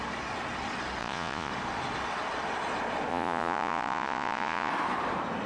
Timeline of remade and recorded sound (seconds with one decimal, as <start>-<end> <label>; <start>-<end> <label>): 0.0-1.0 recorded; 1.0-1.5 remade; 1.5-3.1 recorded; 3.1-4.7 remade; 4.7-5.5 recorded